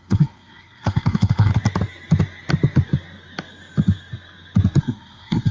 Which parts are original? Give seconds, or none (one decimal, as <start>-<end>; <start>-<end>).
1.5-4.8